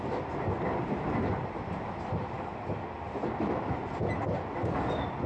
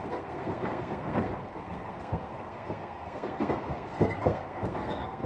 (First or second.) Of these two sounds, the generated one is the second